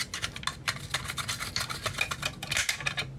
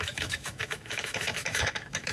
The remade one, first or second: second